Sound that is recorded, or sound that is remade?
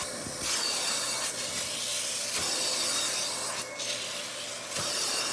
recorded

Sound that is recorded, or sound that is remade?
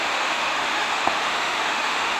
remade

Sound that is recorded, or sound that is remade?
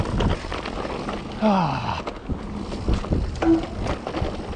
recorded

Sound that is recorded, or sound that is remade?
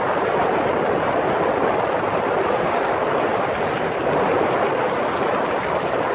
recorded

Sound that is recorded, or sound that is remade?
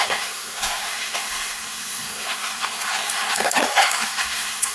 remade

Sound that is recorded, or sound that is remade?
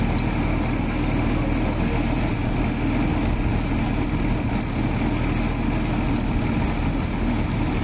recorded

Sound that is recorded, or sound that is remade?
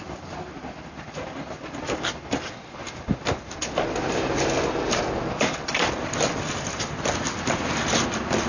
recorded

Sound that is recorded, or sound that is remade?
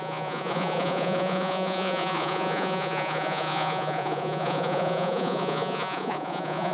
remade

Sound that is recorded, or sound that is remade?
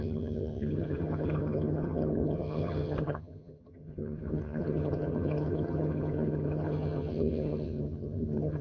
remade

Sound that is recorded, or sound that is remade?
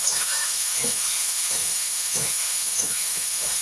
remade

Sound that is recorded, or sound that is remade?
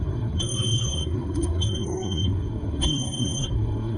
remade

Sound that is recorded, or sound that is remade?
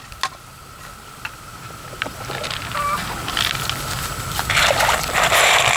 recorded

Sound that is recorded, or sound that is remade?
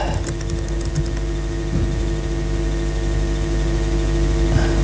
recorded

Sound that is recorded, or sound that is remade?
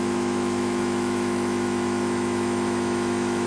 remade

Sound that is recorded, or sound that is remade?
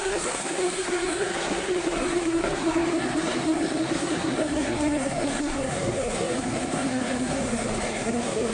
remade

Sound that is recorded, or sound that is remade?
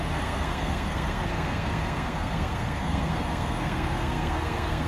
remade